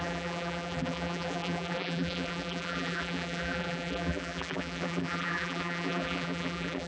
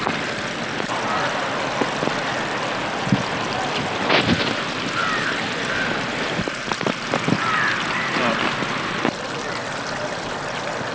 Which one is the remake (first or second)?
first